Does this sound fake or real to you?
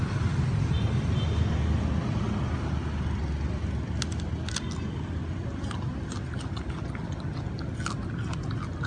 real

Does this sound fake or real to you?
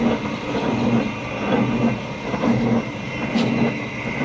real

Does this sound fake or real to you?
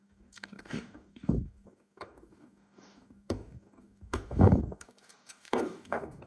fake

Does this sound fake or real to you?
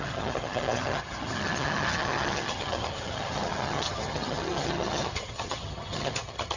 fake